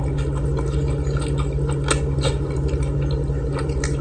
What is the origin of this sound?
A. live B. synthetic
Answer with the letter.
A